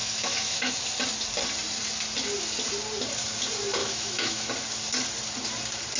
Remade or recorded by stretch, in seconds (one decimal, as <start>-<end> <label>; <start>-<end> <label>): 0.0-0.7 remade; 0.7-3.8 recorded; 3.8-4.5 remade; 4.5-6.0 recorded